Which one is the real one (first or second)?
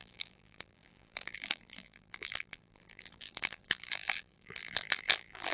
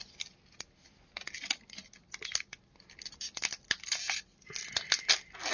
second